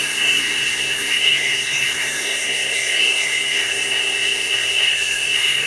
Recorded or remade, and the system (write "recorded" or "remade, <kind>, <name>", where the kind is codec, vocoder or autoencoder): remade, codec, SNAC